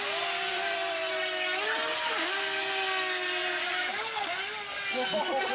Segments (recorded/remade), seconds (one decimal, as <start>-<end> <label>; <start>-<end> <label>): 0.0-0.5 recorded; 0.5-1.3 remade; 1.3-3.4 recorded; 3.4-4.0 remade; 4.0-5.5 recorded